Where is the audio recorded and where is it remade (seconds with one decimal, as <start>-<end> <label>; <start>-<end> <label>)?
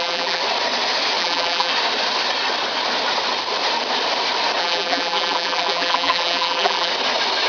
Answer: 0.0-0.4 remade; 0.4-1.2 recorded; 1.2-1.7 remade; 1.7-4.6 recorded; 4.6-6.9 remade; 6.9-7.5 recorded